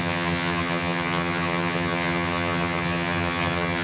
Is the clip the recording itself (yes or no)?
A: no